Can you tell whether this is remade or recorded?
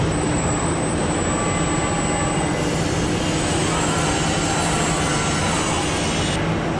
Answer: recorded